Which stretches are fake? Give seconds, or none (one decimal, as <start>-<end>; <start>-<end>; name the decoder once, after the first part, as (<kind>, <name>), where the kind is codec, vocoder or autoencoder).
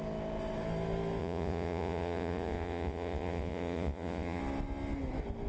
1.2-4.4 (vocoder, Vocos)